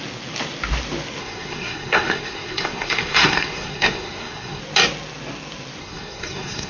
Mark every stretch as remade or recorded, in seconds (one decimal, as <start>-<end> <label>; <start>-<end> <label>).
0.0-1.2 recorded; 1.2-4.6 remade; 4.6-5.8 recorded; 5.8-6.7 remade